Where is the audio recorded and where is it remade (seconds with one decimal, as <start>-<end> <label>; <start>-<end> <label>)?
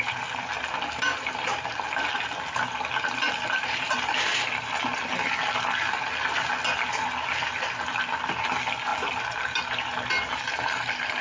0.0-11.2 recorded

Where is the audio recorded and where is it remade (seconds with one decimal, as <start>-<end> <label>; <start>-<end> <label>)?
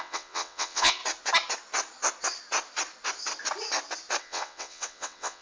0.0-1.0 remade; 1.0-4.2 recorded; 4.2-5.4 remade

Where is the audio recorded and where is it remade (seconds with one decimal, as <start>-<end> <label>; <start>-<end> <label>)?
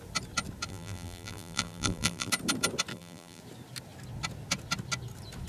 0.0-0.7 recorded; 0.7-2.3 remade; 2.3-2.9 recorded; 2.9-3.4 remade; 3.4-5.5 recorded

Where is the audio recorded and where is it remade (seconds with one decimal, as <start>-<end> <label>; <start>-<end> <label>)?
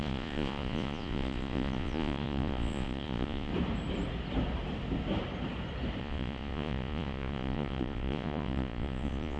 0.0-3.5 remade; 3.5-6.0 recorded; 6.0-9.4 remade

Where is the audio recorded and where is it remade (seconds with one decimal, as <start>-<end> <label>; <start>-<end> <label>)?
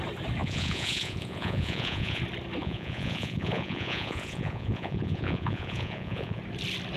0.0-0.4 recorded; 0.4-2.2 remade; 2.2-2.6 recorded; 2.6-6.4 remade; 6.4-7.0 recorded